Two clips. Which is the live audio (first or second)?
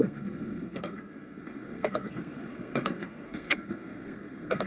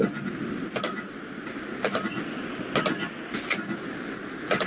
second